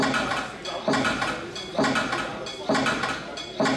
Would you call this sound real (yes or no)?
yes